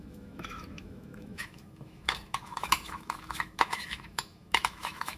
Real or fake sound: fake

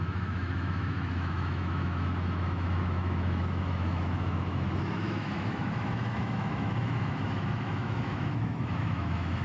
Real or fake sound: fake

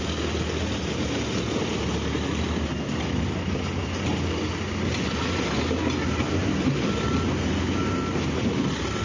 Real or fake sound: real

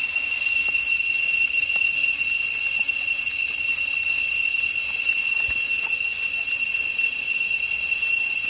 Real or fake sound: real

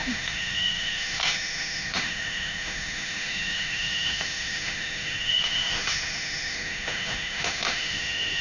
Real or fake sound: fake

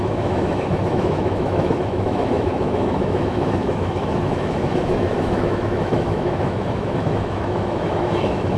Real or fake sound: fake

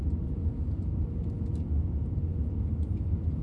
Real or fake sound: real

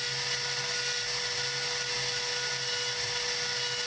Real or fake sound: real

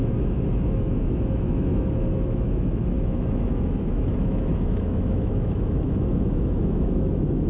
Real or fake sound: fake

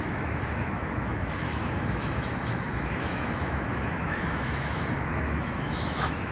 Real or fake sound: fake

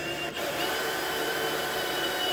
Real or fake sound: real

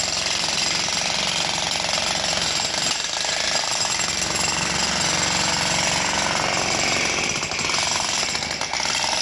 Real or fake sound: real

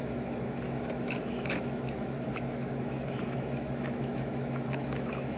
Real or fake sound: fake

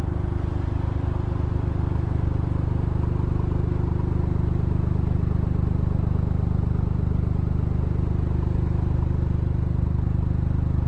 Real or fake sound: real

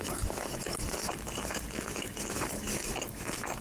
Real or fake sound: fake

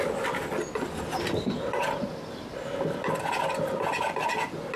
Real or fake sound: real